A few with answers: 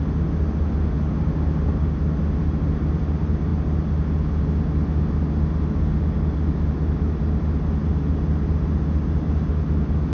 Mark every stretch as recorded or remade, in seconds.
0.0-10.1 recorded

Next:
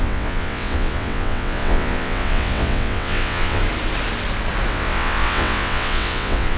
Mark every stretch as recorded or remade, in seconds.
0.0-3.6 remade; 3.6-4.7 recorded; 4.7-6.6 remade

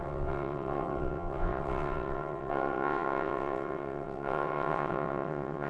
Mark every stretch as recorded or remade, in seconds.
0.0-5.7 remade

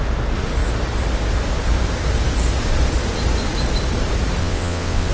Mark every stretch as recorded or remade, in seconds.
0.0-4.4 recorded; 4.4-5.1 remade

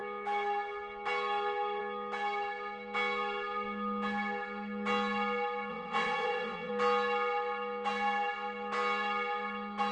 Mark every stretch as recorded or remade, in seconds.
0.0-5.7 recorded; 5.7-6.7 remade; 6.7-9.9 recorded

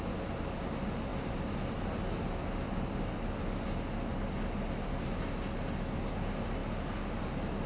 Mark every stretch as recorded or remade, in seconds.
0.0-7.7 recorded